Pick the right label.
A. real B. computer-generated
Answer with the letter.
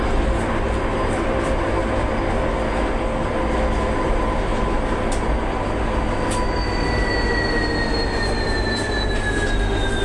A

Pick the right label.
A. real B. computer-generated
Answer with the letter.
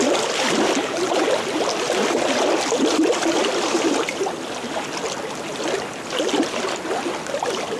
A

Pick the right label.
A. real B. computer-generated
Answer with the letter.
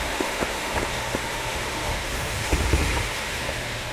B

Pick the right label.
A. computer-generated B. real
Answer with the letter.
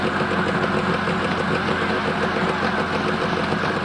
B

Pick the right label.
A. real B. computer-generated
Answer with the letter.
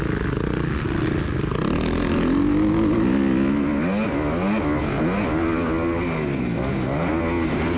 A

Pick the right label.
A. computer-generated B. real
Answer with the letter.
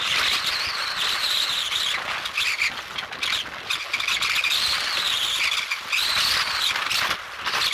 B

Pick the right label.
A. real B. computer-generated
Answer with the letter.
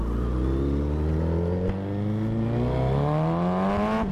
A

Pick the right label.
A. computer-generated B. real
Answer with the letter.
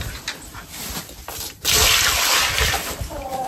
B